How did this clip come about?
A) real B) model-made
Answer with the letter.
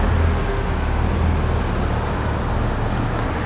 A